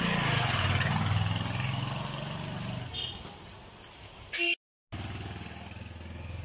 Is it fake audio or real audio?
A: real